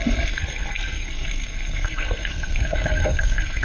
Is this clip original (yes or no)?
no